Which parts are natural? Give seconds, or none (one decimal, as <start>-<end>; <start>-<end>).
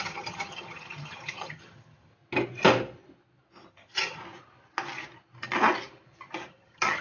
2.1-3.7; 4.2-6.5